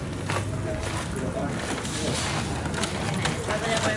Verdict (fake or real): real